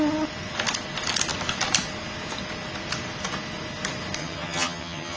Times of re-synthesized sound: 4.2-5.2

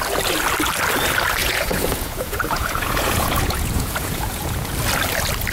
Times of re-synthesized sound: 1.4-4.7